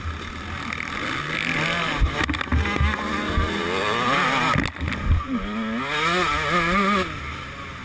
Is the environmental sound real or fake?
real